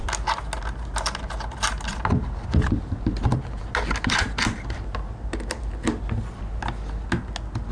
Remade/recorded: recorded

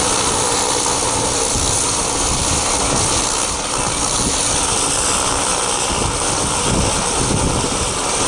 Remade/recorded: recorded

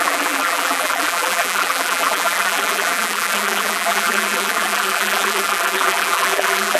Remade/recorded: remade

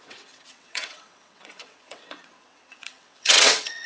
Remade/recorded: remade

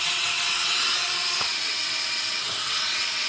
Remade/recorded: remade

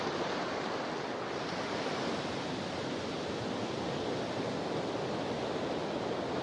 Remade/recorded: recorded